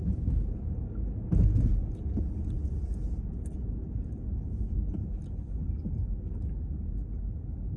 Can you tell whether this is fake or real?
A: real